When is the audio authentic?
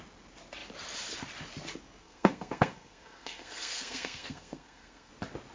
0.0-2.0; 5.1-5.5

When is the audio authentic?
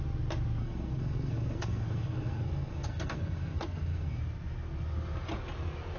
0.0-0.6; 4.2-6.0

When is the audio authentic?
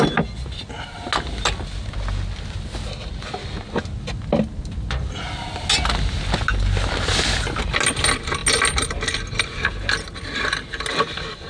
0.0-11.5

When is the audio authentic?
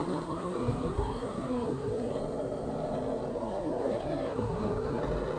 2.1-3.3; 5.0-5.4